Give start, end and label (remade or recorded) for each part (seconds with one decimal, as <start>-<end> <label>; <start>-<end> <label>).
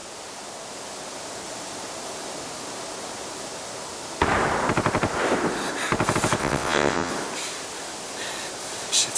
0.0-6.4 recorded; 6.4-7.1 remade; 7.1-9.2 recorded